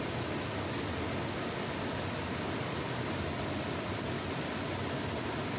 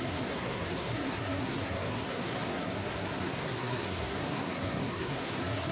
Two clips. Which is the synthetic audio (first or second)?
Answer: second